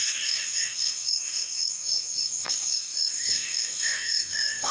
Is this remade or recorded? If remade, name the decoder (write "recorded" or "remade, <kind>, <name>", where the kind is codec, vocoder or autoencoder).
remade, codec, DAC